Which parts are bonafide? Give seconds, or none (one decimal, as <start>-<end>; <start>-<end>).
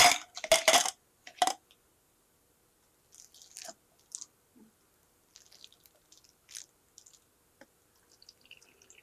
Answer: 0.0-9.0